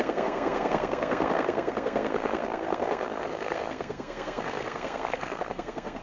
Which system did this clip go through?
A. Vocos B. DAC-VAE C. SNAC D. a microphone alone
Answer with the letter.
C